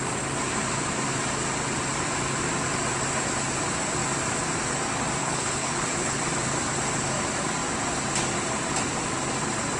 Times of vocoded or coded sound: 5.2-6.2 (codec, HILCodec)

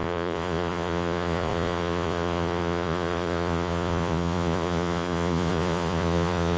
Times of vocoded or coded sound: 0.0-6.6 (vocoder, Vocos)

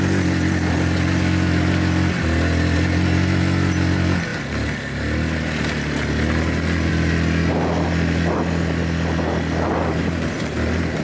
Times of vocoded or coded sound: none

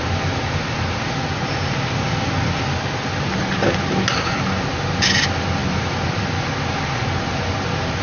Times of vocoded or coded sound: none

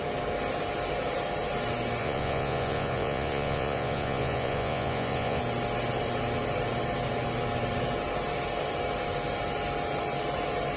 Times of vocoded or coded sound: 2.0-5.4 (vocoder, Vocos)

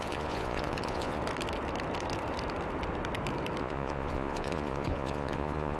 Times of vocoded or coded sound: 0.0-1.2 (vocoder, Vocos); 3.6-5.8